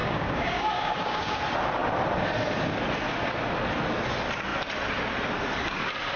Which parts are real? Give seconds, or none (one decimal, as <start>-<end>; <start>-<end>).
1.4-6.2